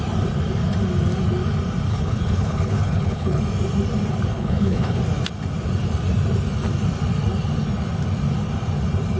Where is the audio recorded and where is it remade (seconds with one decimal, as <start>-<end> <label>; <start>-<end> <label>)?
0.0-1.9 recorded; 1.9-3.4 remade; 3.4-4.3 recorded; 4.3-5.0 remade; 5.0-9.2 recorded